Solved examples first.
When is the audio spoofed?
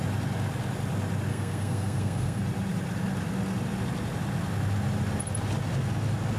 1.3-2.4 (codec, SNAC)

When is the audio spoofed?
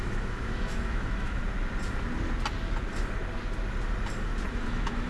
0.0-1.4 (autoencoder, DAC-VAE); 4.5-5.1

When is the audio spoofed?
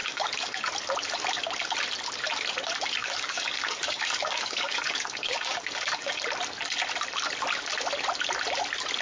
0.0-0.7 (codec, DAC); 3.0-6.2